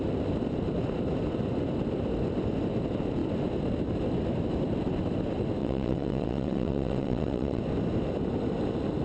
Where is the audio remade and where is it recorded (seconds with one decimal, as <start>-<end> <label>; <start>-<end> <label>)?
0.0-5.6 recorded; 5.6-7.6 remade; 7.6-9.0 recorded